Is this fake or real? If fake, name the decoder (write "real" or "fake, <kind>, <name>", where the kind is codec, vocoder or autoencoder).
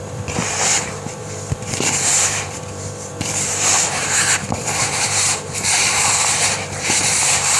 fake, vocoder, BigVGAN v2